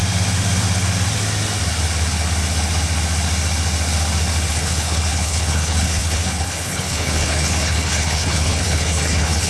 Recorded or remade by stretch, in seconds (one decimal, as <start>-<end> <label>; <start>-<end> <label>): 0.0-4.5 recorded; 4.5-9.5 remade